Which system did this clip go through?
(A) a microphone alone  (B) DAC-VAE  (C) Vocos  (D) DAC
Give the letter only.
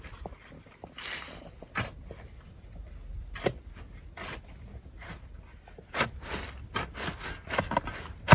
A